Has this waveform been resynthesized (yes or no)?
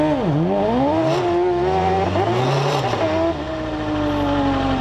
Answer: no